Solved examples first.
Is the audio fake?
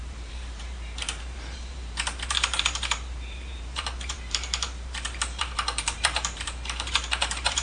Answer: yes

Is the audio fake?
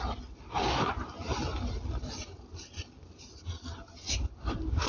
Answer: no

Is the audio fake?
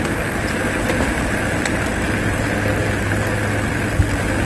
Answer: no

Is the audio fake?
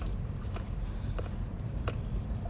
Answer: yes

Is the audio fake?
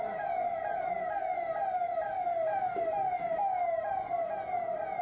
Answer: no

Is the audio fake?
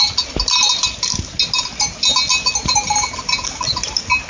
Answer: no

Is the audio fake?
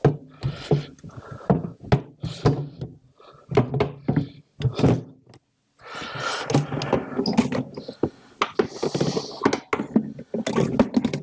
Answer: no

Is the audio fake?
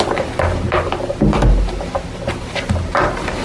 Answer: no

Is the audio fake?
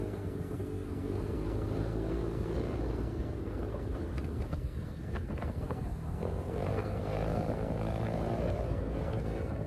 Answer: yes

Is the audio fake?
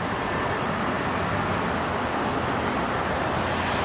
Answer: no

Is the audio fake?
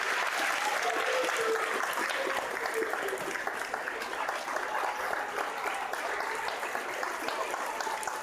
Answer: no